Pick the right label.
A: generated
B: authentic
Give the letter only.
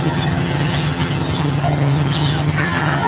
A